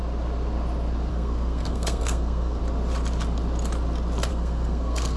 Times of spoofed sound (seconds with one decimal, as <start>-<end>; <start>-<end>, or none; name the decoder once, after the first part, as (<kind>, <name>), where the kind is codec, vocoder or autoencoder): 1.1-2.6 (codec, SNAC); 4.3-5.2